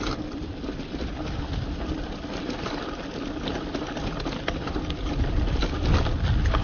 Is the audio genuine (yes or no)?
yes